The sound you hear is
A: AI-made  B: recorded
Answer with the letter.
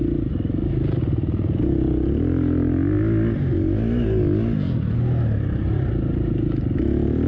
B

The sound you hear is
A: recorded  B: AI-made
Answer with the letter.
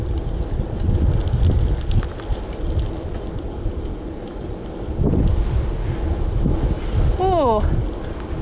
A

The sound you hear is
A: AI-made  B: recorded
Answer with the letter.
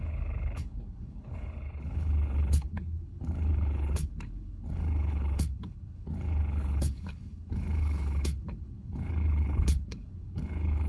A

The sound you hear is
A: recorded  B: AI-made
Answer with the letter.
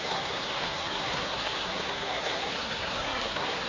B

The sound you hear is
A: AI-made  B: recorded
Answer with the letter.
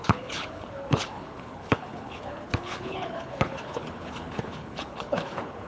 A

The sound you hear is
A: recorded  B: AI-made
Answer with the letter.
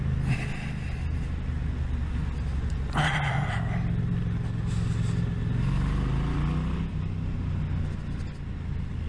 A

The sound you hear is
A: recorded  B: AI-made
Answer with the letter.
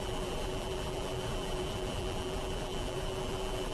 B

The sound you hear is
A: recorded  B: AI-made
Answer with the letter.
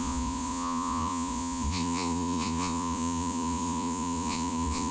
B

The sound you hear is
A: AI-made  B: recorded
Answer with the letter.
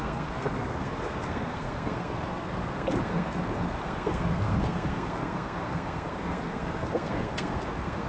A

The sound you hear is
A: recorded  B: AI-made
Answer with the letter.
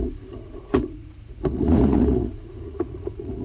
B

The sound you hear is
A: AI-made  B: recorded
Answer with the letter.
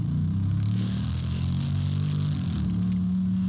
B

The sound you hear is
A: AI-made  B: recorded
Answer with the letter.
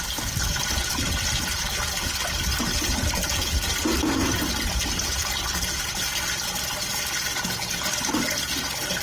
B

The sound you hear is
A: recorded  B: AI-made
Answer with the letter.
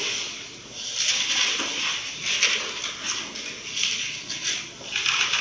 A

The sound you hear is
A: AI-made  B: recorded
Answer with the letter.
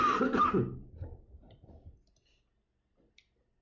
B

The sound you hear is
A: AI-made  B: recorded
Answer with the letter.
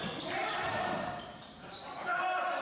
B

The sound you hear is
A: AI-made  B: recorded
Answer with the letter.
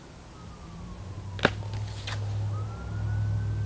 B